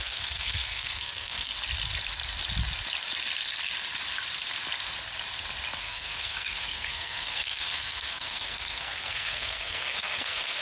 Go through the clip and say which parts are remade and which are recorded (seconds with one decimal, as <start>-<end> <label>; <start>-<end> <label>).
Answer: 0.0-1.5 remade; 1.5-5.8 recorded; 5.8-10.6 remade